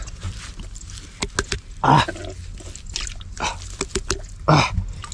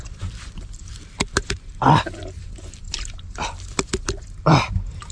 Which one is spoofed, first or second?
second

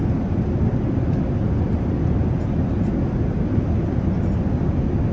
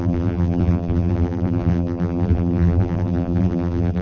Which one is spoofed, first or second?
second